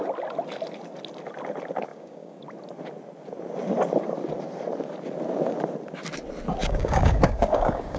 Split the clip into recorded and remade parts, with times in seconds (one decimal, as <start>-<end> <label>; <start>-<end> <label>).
0.0-1.9 recorded; 1.9-2.4 remade; 2.4-6.6 recorded; 6.6-8.0 remade